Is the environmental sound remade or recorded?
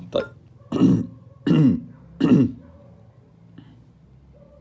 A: recorded